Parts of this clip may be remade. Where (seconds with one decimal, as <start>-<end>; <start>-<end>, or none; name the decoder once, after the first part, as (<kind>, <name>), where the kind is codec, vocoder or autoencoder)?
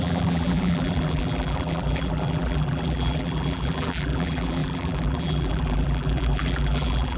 0.0-7.2 (vocoder, BigVGAN v2)